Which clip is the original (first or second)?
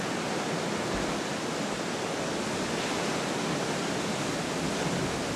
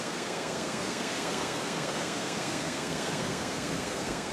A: first